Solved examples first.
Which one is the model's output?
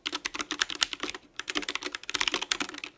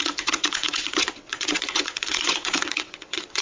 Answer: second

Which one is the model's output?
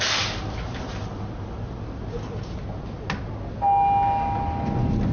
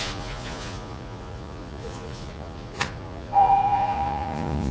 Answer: second